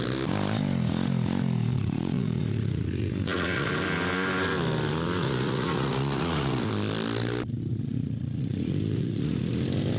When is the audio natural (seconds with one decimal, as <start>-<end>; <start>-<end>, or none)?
0.0-1.7; 3.7-5.2; 6.7-7.7; 9.5-10.0